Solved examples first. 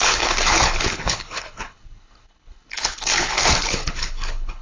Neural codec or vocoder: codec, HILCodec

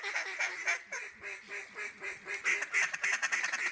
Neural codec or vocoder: none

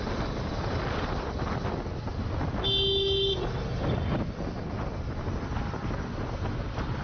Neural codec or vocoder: none